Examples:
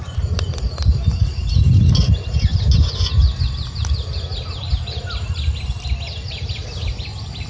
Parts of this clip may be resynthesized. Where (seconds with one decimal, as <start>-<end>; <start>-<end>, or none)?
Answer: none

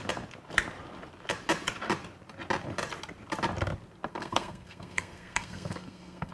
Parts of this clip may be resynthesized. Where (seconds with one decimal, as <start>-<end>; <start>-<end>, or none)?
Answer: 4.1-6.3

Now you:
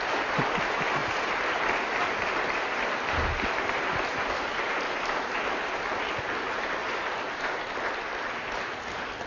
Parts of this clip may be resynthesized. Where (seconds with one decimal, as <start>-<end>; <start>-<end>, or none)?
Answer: none